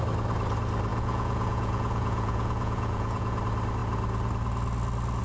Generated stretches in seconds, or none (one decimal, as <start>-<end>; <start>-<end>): 0.9-3.4